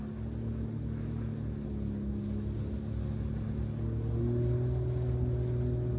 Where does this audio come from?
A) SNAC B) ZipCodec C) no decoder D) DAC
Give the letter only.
C